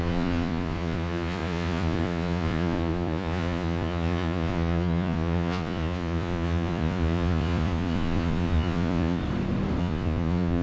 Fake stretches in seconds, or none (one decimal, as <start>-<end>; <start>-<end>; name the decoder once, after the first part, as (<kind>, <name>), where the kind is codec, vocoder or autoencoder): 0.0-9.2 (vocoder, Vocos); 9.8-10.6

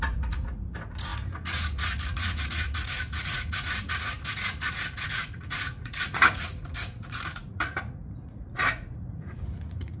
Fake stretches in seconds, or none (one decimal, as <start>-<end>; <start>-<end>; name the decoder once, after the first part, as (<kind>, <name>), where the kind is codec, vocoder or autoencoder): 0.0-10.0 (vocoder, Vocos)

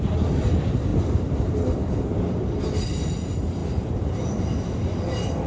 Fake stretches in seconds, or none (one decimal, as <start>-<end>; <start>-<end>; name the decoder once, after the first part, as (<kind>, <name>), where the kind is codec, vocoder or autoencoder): none